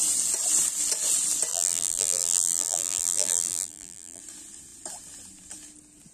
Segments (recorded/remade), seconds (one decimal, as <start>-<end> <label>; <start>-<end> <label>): 0.0-1.5 recorded; 1.5-4.2 remade; 4.2-6.1 recorded